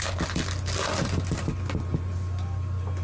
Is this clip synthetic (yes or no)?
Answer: no